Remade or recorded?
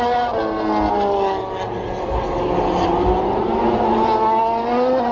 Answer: recorded